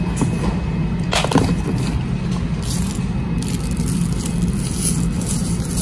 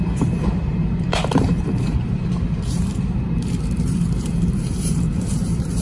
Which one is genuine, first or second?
first